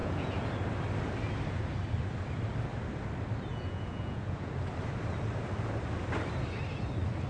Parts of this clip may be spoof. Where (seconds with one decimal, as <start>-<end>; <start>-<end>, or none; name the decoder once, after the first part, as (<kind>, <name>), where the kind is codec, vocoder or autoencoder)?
0.0-0.5 (vocoder, Vocos); 3.5-4.5